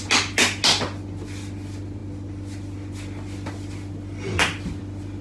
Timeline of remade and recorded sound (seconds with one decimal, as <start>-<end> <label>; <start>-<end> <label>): 0.0-5.2 recorded